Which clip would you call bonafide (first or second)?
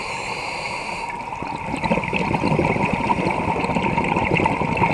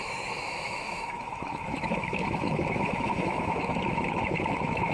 first